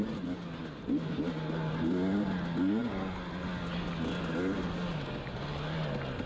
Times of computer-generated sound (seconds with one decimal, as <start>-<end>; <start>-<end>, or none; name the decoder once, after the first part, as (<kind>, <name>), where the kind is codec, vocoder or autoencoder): none